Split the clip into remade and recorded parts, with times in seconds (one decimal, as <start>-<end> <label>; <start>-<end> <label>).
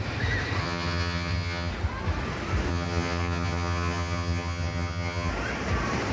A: 0.0-0.6 recorded; 0.6-1.7 remade; 1.7-2.7 recorded; 2.7-5.3 remade; 5.3-6.1 recorded